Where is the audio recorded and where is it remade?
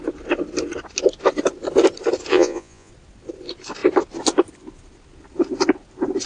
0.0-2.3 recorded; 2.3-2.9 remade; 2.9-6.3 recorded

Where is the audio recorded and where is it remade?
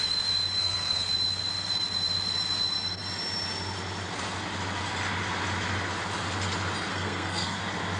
0.0-0.6 recorded; 0.6-1.1 remade; 1.1-6.9 recorded; 6.9-7.6 remade; 7.6-8.0 recorded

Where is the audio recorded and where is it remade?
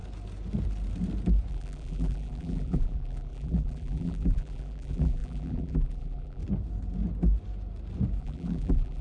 0.0-1.5 recorded; 1.5-6.4 remade; 6.4-8.2 recorded; 8.2-9.0 remade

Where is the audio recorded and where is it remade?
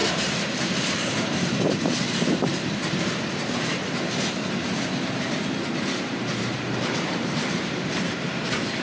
0.0-2.5 remade; 2.5-6.1 recorded; 6.1-8.8 remade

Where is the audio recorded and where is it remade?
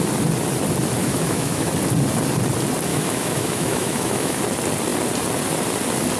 0.0-1.0 recorded; 1.0-1.7 remade; 1.7-2.9 recorded; 2.9-4.4 remade; 4.4-6.2 recorded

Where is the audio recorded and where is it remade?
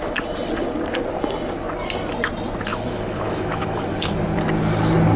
0.0-2.7 recorded; 2.7-4.2 remade; 4.2-5.2 recorded